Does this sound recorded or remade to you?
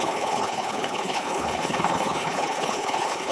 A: remade